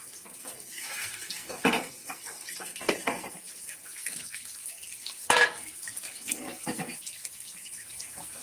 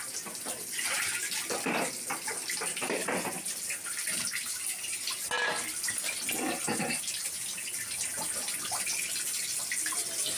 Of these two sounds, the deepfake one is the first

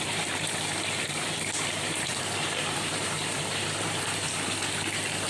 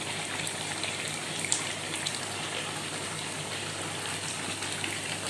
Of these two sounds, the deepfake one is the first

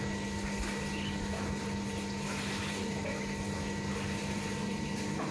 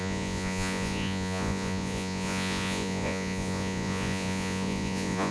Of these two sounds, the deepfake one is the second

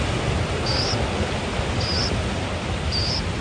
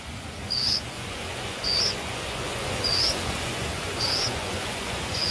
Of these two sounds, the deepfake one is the second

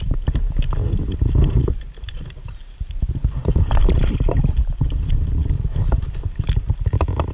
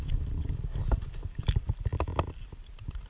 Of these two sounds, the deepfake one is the first